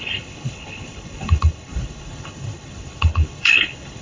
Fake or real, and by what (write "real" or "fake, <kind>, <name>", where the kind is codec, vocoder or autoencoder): fake, codec, HILCodec